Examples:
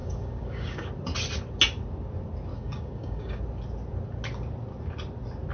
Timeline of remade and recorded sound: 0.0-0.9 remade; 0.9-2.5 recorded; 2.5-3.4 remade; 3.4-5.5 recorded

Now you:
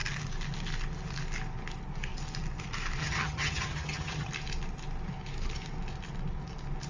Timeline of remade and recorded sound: 0.0-3.0 recorded; 3.0-4.3 remade; 4.3-6.9 recorded